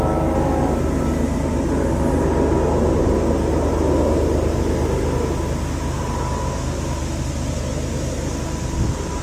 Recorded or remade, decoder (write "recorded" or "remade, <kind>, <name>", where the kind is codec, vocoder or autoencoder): recorded